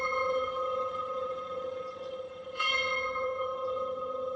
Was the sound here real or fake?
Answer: fake